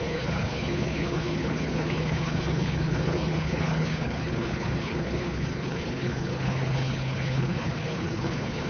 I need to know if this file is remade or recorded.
remade